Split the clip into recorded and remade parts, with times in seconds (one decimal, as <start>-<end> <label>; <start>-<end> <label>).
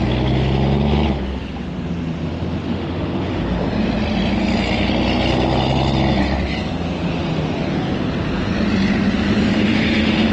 0.0-2.7 recorded; 2.7-3.4 remade; 3.4-9.5 recorded; 9.5-10.3 remade